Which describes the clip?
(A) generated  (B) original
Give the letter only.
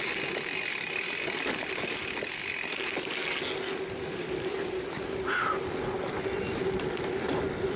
B